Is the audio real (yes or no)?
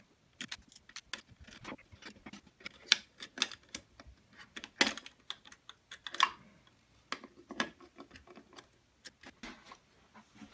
yes